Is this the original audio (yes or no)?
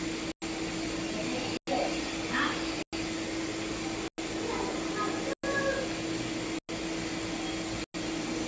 yes